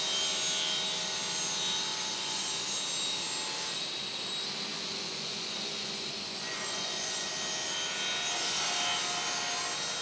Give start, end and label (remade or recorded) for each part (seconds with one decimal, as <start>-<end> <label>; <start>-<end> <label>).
0.0-1.9 recorded; 1.9-2.5 remade; 2.5-4.7 recorded; 4.7-7.3 remade; 7.3-10.0 recorded

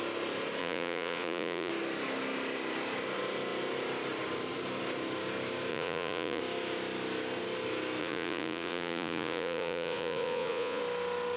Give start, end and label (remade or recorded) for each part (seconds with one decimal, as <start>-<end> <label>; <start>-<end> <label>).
0.0-0.6 recorded; 0.6-1.7 remade; 1.7-5.7 recorded; 5.7-6.4 remade; 6.4-8.0 recorded; 8.0-10.8 remade; 10.8-11.4 recorded

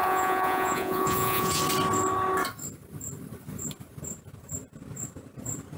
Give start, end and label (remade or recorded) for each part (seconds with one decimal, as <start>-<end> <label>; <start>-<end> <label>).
0.0-1.6 remade; 1.6-5.8 recorded

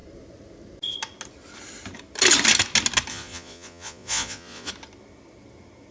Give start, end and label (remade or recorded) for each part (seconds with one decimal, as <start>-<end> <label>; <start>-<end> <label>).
0.0-3.1 recorded; 3.1-4.7 remade; 4.7-5.9 recorded

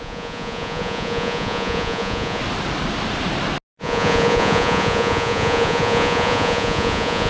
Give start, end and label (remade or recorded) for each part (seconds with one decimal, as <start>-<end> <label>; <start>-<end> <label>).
0.0-2.4 remade; 2.4-3.8 recorded; 3.8-7.3 remade

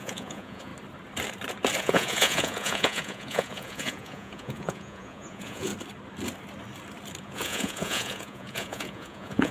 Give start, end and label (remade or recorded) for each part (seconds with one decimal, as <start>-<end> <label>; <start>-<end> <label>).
0.0-0.7 remade; 0.7-1.8 recorded; 1.8-5.7 remade; 5.7-7.2 recorded; 7.2-9.5 remade

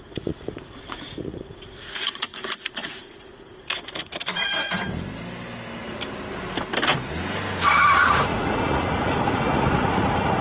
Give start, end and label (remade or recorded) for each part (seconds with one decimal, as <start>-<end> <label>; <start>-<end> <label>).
0.0-4.8 remade; 4.8-7.8 recorded; 7.8-10.4 remade

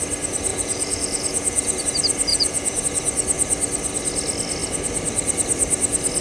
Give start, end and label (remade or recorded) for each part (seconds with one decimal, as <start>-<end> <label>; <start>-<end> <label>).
0.0-0.5 recorded; 0.5-1.8 remade; 1.8-2.3 recorded; 2.3-2.8 remade; 2.8-6.2 recorded